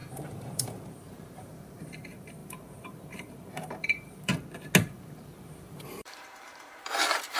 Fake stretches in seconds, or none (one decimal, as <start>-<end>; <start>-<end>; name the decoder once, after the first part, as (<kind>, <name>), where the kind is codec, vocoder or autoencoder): 0.0-4.3 (vocoder, BigVGAN v2); 4.8-7.4